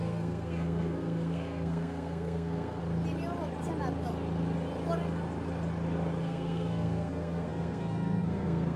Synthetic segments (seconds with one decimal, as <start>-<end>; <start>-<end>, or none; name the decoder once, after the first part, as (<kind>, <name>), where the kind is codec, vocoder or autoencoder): 0.0-2.8 (codec, SNAC); 6.2-8.8